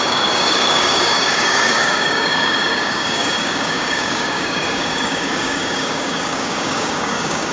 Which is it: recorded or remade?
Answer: remade